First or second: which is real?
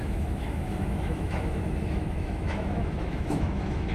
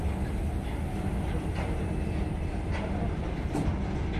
second